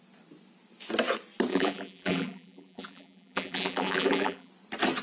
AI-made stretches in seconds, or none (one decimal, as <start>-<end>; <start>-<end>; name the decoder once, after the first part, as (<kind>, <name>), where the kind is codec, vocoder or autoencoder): 1.5-4.5 (vocoder, BigVGAN v2)